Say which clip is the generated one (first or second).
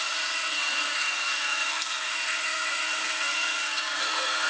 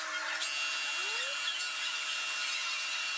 first